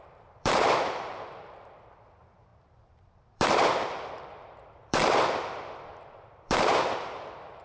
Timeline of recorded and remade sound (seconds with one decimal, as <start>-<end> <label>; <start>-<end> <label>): 0.0-5.0 remade; 5.0-6.1 recorded; 6.1-7.6 remade